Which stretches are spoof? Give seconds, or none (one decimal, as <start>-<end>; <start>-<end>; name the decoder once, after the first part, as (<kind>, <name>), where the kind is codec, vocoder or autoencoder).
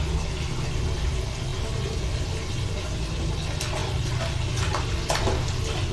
none